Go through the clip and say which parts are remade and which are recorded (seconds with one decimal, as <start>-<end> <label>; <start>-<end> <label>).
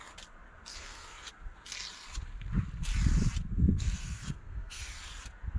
0.0-0.7 recorded; 0.7-1.3 remade; 1.3-3.5 recorded; 3.5-4.9 remade; 4.9-5.6 recorded